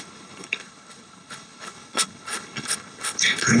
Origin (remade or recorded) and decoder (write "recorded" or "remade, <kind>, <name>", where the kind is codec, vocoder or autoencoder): remade, codec, HILCodec